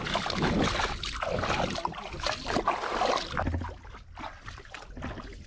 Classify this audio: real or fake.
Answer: real